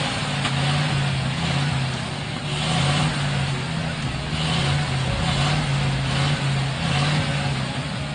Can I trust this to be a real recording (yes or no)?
yes